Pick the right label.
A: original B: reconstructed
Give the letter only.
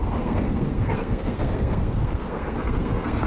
B